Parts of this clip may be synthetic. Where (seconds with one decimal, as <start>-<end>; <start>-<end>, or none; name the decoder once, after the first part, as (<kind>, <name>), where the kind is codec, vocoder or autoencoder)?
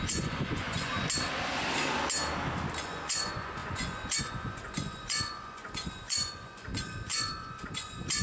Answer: 0.0-0.9 (vocoder, Vocos); 2.8-8.2